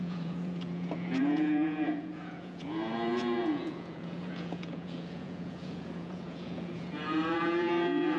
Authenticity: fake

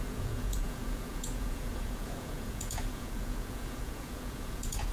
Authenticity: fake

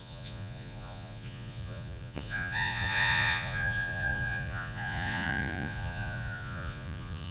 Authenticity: fake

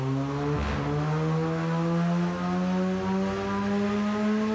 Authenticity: real